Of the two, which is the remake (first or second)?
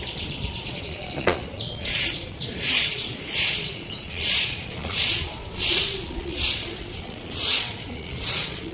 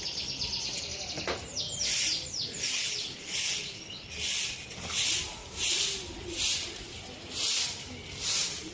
first